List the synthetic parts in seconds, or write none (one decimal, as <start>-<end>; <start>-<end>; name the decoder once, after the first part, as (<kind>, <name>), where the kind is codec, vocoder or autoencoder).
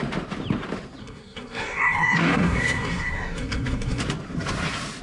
1.0-4.0 (codec, SNAC)